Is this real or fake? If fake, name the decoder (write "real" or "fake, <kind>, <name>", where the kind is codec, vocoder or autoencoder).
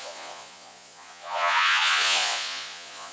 fake, vocoder, Vocos